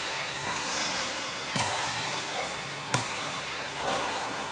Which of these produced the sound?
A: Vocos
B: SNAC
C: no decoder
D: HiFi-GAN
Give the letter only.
B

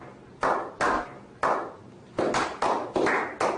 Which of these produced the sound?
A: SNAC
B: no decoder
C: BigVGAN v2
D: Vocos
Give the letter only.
B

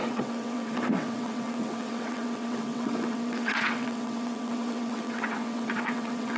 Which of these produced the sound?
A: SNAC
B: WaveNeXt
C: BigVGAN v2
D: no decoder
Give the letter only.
B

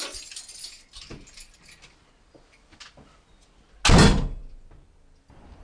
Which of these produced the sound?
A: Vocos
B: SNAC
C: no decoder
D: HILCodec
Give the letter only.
C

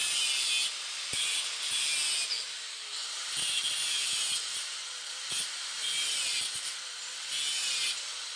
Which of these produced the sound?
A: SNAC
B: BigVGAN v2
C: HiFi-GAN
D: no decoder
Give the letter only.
D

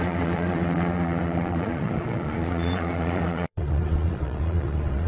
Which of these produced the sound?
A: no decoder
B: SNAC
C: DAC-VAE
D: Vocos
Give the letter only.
D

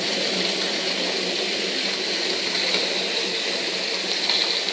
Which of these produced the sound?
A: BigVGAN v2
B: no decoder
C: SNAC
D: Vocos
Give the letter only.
B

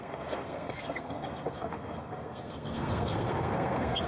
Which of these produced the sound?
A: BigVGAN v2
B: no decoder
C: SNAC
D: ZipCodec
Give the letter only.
C